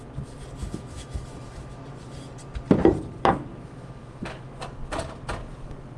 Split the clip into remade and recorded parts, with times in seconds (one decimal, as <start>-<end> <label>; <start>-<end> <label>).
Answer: 0.0-0.6 recorded; 0.6-1.8 remade; 1.8-3.5 recorded; 3.5-4.5 remade; 4.5-6.0 recorded